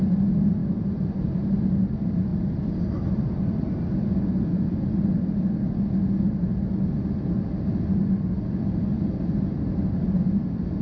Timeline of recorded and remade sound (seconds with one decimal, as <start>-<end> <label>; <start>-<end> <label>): 0.0-0.6 recorded; 0.6-1.6 remade; 1.6-10.8 recorded